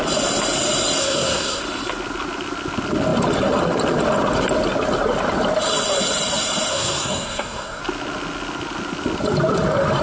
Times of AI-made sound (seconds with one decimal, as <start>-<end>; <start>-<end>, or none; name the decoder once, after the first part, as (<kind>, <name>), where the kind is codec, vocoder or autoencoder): 1.0-1.6 (codec, SNAC); 6.7-7.8

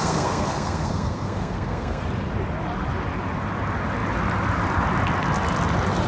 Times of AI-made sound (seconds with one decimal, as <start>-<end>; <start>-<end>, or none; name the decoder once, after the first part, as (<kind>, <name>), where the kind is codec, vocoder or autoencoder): 0.0-2.0 (codec, SNAC)

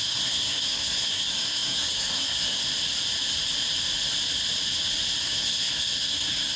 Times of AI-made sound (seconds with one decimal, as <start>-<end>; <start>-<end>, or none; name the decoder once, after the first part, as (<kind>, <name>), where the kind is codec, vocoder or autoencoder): 0.0-2.6 (codec, SNAC); 5.2-6.6

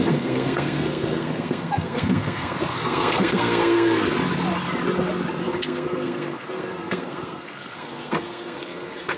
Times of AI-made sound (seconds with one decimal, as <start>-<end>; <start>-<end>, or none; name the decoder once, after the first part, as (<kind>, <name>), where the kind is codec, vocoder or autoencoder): 0.0-4.0 (codec, SNAC); 5.5-9.2

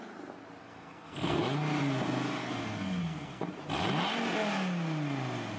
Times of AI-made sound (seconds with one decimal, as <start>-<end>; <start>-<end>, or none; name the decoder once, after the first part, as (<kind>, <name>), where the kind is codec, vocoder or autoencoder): 0.6-1.4 (codec, SNAC); 2.4-3.4

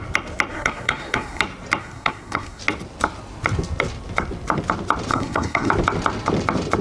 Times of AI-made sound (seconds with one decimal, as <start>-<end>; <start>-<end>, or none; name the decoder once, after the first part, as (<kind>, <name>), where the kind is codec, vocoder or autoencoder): 0.5-1.4 (codec, SNAC); 1.8-2.6; 5.1-5.7

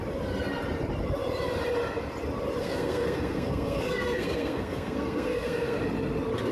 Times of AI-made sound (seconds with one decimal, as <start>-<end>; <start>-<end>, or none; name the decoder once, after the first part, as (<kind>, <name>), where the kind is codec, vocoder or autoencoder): 2.6-5.8 (codec, SNAC)